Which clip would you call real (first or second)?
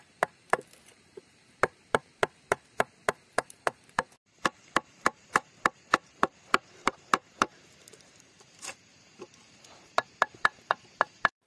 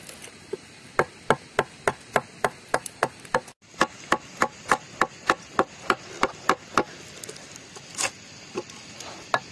second